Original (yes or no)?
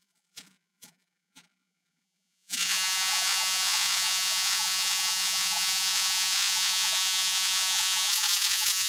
no